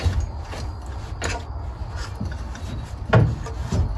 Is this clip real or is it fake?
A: real